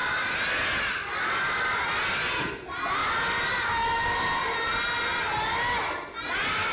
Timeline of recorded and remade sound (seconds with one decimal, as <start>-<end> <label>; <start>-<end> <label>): 0.0-6.7 recorded